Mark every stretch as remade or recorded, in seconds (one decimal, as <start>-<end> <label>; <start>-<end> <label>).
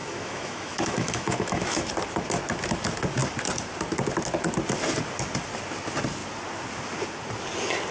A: 0.0-1.9 remade; 1.9-7.9 recorded